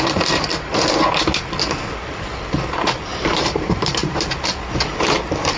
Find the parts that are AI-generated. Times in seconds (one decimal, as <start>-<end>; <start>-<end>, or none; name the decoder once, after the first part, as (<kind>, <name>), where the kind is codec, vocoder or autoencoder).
3.1-4.3 (vocoder, BigVGAN v2)